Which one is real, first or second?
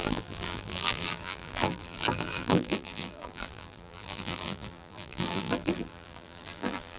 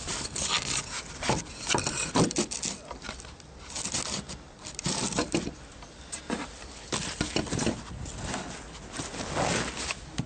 second